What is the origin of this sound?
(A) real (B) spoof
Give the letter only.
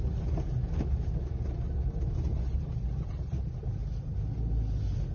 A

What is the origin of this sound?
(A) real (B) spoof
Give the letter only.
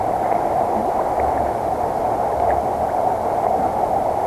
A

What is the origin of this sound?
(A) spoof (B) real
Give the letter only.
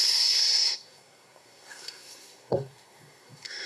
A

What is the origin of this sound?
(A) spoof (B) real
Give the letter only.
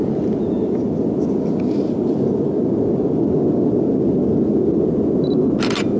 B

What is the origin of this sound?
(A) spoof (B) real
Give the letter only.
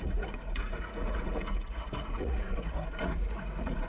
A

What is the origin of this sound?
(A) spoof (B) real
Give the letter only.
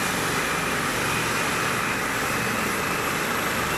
B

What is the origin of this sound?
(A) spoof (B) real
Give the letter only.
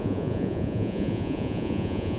A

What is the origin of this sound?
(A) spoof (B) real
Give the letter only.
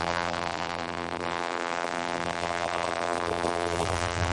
A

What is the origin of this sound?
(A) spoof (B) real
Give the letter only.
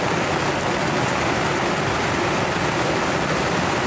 B